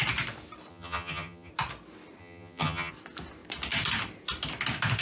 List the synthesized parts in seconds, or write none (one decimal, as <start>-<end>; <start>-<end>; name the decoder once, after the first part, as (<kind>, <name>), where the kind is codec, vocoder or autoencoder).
0.7-1.5 (vocoder, HiFi-GAN); 2.2-2.9